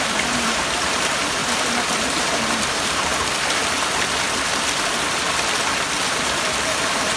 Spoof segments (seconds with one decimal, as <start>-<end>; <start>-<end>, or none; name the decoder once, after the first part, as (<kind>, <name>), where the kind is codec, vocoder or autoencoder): 0.0-1.4 (vocoder, BigVGAN v2); 2.0-3.1; 6.2-7.2